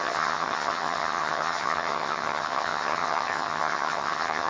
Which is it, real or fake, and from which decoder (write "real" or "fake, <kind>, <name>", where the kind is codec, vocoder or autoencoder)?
fake, vocoder, HiFi-GAN